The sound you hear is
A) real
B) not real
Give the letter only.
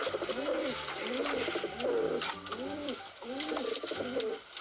A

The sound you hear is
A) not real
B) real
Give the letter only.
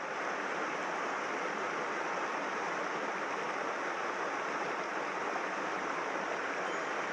B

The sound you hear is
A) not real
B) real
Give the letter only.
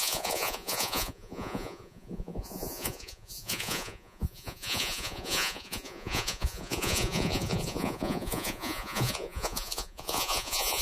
A